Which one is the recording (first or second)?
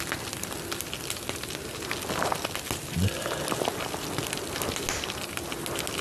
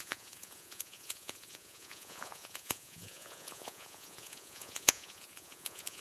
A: first